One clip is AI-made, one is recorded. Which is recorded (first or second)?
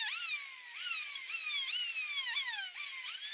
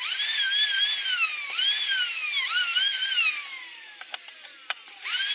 first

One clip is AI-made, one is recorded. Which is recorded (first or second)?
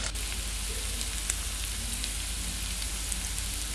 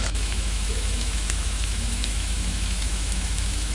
first